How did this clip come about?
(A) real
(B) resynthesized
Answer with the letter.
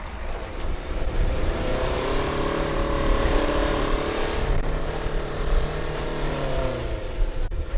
B